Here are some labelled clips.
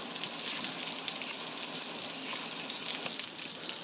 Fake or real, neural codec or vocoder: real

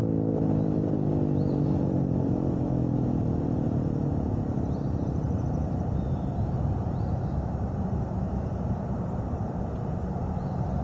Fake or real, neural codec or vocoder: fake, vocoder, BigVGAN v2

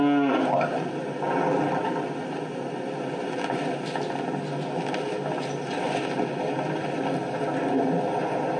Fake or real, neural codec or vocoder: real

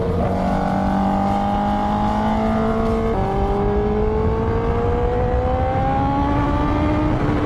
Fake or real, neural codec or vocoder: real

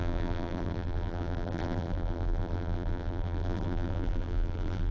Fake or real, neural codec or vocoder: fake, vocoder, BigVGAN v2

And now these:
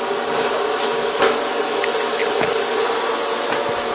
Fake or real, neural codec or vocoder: real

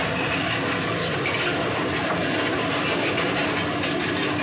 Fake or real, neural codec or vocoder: real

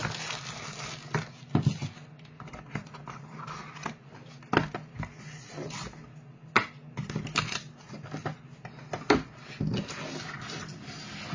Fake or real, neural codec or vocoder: real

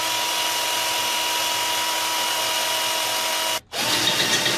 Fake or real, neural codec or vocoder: real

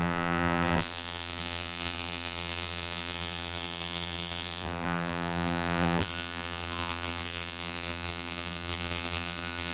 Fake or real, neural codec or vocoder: fake, vocoder, BigVGAN v2